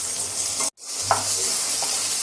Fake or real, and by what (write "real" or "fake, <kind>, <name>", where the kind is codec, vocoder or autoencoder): real